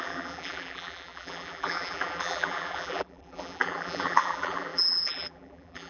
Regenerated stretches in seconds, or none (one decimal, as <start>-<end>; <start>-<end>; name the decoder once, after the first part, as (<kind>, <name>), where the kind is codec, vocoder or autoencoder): 0.0-5.9 (vocoder, BigVGAN v2)